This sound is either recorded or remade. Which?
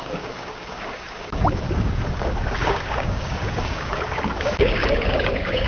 remade